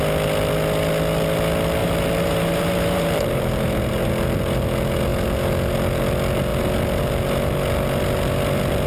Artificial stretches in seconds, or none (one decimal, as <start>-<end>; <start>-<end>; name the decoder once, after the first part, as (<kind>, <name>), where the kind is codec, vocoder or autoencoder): 1.8-4.1 (vocoder, BigVGAN v2)